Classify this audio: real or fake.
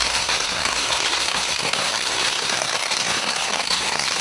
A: fake